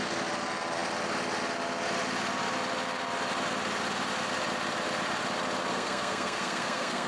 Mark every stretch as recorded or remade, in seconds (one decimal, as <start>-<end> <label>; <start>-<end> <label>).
0.0-5.7 recorded; 5.7-7.1 remade